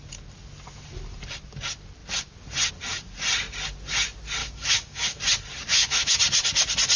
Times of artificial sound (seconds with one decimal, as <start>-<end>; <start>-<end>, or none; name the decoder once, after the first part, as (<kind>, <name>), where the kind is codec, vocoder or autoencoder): 4.4-5.2 (autoencoder, DAC-VAE); 5.7-6.2